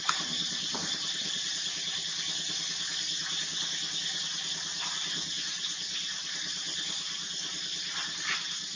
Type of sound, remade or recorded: recorded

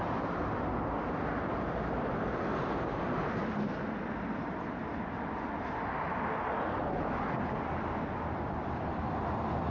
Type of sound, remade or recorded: recorded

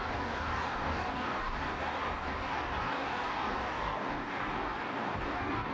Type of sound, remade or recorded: remade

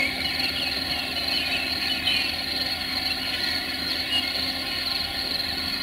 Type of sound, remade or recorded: recorded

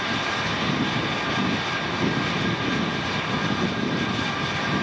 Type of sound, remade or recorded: recorded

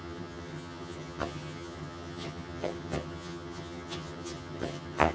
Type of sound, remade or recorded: remade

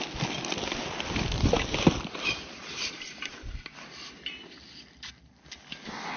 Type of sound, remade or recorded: recorded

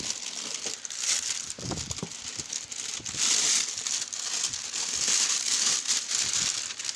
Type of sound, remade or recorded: recorded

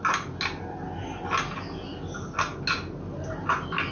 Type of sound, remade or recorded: recorded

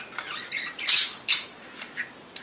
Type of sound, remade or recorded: recorded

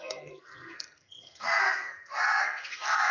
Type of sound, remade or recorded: remade